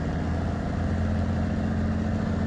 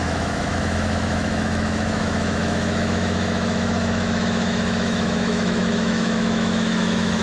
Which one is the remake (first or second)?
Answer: second